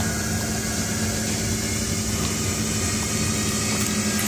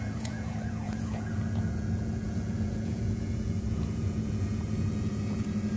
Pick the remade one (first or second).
second